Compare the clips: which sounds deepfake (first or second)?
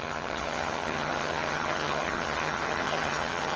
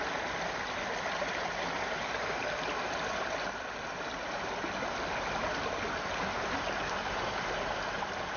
first